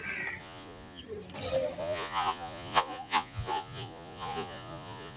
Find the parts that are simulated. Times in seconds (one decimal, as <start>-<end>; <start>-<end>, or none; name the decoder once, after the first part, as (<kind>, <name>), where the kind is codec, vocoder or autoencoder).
0.4-1.0 (vocoder, Vocos); 1.8-5.2